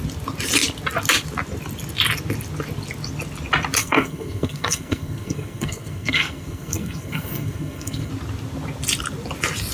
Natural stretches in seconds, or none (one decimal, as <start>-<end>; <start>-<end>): 0.0-3.8; 8.1-9.7